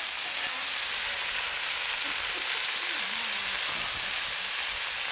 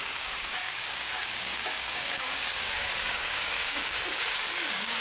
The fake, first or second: second